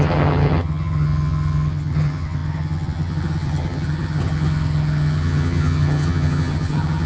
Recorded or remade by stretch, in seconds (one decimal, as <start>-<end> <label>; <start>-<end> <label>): 0.0-7.1 remade